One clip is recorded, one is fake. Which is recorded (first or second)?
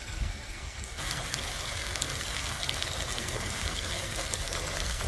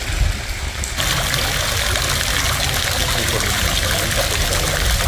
second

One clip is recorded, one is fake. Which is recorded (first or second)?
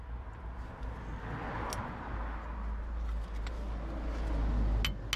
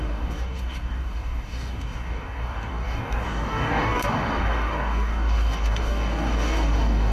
first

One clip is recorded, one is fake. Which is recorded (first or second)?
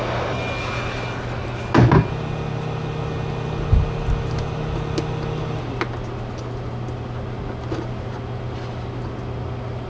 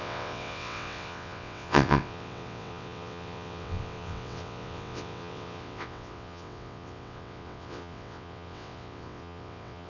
first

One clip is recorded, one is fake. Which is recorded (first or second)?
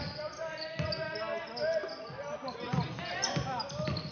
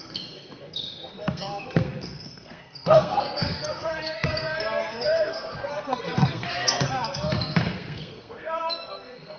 first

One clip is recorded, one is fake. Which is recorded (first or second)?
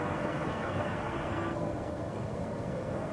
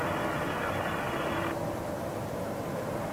second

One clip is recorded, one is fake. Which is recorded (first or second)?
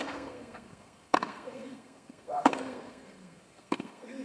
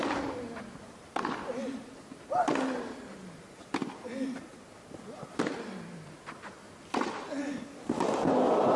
second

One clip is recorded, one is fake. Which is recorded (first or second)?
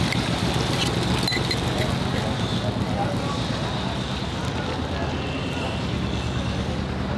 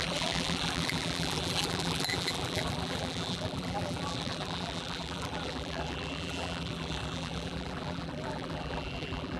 first